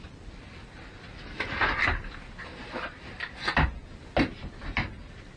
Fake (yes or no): no